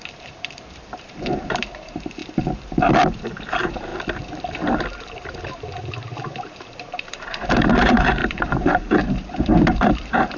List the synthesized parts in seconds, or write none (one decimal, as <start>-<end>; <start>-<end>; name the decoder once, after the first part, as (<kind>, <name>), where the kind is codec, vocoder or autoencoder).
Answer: 0.0-3.9 (vocoder, BigVGAN v2); 5.9-10.4